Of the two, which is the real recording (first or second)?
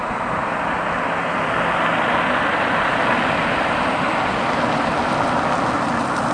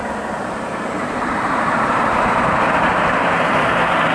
first